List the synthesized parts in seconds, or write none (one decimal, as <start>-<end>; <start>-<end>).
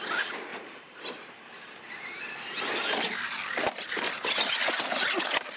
0.5-2.2